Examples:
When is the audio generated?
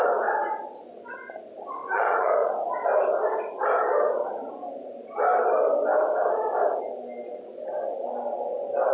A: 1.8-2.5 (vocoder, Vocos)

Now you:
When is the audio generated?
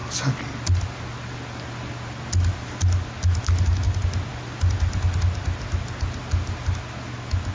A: none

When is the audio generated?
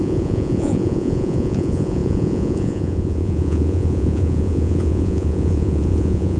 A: 0.0-6.4 (vocoder, Vocos)